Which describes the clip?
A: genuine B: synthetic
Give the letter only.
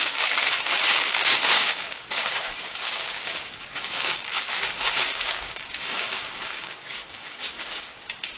B